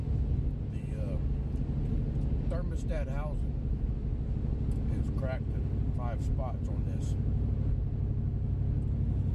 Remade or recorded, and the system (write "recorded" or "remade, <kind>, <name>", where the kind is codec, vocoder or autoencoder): recorded